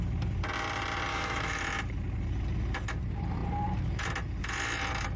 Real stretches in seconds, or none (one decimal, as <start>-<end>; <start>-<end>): 0.0-1.1; 1.6-5.2